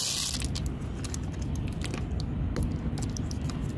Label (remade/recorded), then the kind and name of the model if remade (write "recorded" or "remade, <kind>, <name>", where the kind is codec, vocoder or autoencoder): recorded